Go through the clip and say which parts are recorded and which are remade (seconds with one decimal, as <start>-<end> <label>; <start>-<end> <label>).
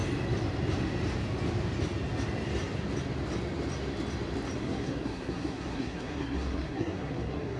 0.0-4.6 recorded; 4.6-7.6 remade